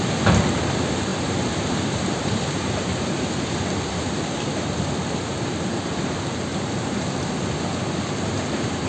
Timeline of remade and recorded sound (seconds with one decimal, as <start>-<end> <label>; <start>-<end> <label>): 0.0-1.1 recorded; 1.1-2.3 remade; 2.3-6.5 recorded; 6.5-7.1 remade; 7.1-8.9 recorded